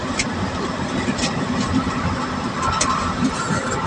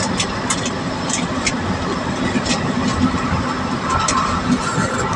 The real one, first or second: second